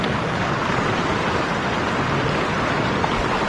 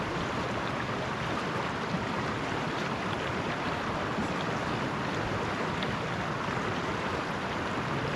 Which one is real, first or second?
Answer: first